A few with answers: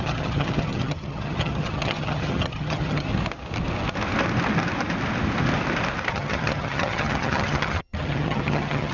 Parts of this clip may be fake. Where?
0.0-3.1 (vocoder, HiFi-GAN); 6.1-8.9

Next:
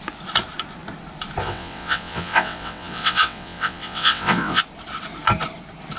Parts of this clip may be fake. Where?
1.4-4.6 (vocoder, WaveNeXt)

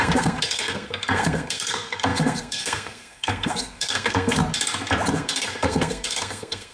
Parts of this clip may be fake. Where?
0.0-4.4 (codec, SNAC); 5.1-6.7

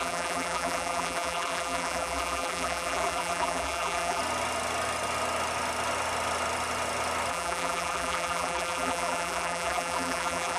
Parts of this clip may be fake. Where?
0.0-4.2 (vocoder, BigVGAN v2); 7.3-10.6

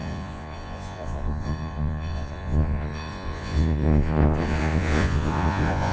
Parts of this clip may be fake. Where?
0.0-5.9 (vocoder, Vocos)

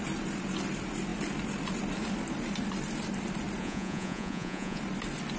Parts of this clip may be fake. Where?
3.6-4.8 (vocoder, Vocos)

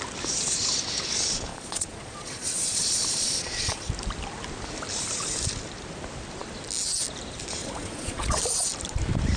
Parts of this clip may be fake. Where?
1.5-3.9 (vocoder, Vocos); 7.6-8.4